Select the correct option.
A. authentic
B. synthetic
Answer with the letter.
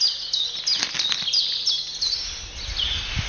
A